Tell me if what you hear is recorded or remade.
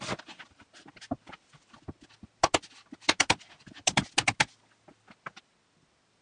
recorded